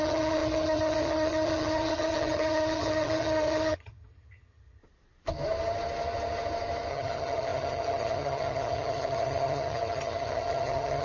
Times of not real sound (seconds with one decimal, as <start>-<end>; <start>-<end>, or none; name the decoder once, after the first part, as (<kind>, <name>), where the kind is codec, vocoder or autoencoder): 0.0-4.8 (vocoder, HiFi-GAN); 6.9-11.0